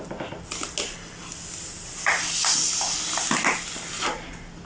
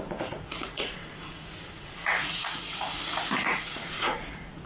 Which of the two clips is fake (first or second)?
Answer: second